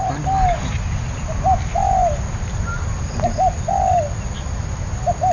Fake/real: real